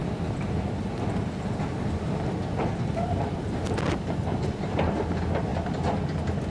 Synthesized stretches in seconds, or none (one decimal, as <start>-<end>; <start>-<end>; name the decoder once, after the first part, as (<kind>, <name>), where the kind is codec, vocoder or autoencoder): none